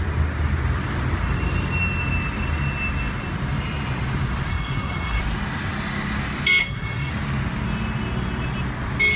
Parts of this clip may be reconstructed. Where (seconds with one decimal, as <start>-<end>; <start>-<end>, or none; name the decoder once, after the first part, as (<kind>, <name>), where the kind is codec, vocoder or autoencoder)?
4.5-5.2 (codec, SNAC); 6.6-7.1

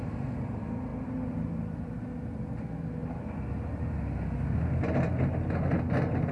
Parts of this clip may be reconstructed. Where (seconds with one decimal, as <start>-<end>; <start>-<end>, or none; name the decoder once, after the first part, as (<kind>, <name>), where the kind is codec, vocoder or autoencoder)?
none

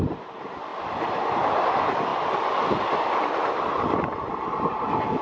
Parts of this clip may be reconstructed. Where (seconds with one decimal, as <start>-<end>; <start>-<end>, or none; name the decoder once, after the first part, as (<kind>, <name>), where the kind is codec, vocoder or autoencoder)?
none

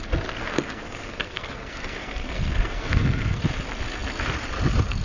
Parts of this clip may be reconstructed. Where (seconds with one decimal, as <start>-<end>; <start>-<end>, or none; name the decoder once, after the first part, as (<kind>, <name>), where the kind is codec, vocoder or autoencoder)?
0.4-3.4 (codec, SNAC)

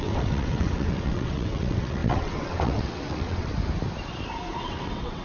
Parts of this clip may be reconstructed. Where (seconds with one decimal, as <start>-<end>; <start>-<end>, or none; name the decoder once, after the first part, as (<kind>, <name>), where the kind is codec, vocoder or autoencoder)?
0.0-3.5 (vocoder, WaveNeXt); 4.6-5.2

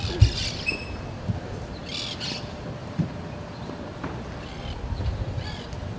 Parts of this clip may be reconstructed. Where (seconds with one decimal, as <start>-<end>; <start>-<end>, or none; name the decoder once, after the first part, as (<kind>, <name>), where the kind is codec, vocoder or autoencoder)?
none

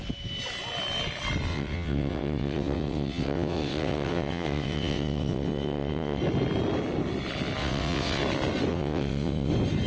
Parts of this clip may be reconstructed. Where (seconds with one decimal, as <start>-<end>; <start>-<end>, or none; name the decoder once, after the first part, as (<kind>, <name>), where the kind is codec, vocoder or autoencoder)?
1.5-6.2 (vocoder, WaveNeXt); 7.6-8.2; 8.7-9.5

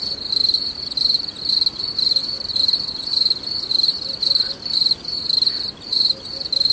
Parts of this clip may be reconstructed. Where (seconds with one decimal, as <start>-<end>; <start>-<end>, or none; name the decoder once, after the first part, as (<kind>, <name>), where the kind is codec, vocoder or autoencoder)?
none